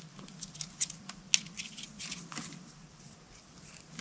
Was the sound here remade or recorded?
recorded